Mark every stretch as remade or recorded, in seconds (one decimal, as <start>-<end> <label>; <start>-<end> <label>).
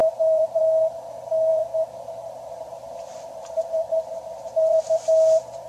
0.0-0.6 remade; 0.6-1.5 recorded; 1.5-4.8 remade; 4.8-5.7 recorded